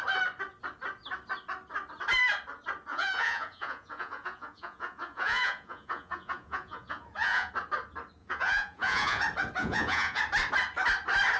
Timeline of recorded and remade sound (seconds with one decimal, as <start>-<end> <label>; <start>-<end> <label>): 0.0-2.9 recorded; 2.9-7.5 remade; 7.5-8.2 recorded; 8.2-9.2 remade; 9.2-9.6 recorded; 9.6-10.2 remade; 10.2-11.4 recorded